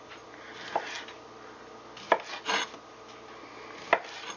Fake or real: real